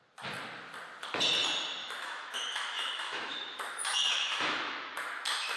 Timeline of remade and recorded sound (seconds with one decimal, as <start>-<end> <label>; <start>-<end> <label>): 0.0-1.8 recorded; 1.8-5.6 remade